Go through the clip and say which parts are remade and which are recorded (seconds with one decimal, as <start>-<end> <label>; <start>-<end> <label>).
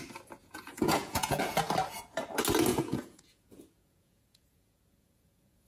0.0-0.4 recorded; 0.4-1.4 remade; 1.4-2.7 recorded; 2.7-5.7 remade